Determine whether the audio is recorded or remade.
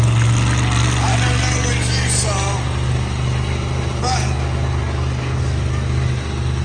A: recorded